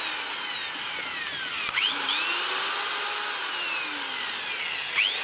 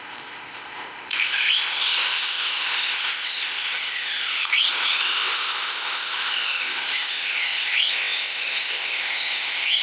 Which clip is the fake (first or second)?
second